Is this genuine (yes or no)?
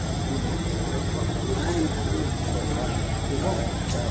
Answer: yes